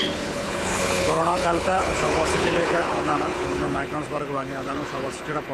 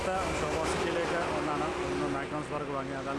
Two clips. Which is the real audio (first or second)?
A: second